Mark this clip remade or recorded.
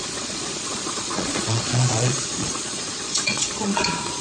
remade